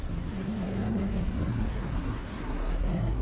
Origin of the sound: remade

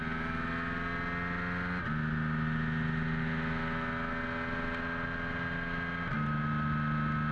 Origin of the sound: recorded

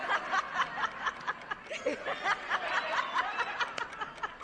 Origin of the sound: recorded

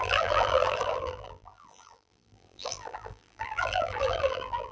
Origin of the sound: remade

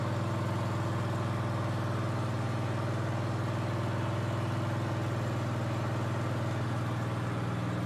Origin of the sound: recorded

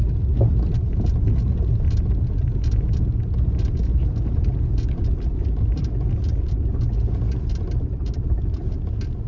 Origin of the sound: recorded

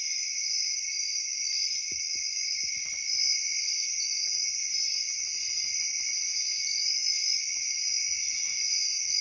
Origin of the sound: recorded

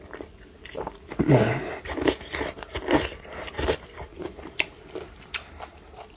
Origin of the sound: recorded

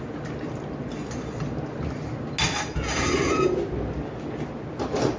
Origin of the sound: recorded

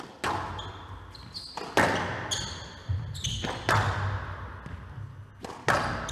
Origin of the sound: recorded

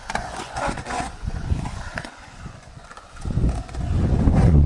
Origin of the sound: remade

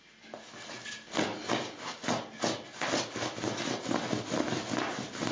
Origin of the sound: recorded